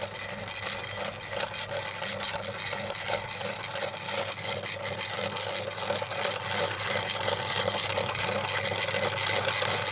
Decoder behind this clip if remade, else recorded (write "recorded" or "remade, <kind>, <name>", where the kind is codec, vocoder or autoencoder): recorded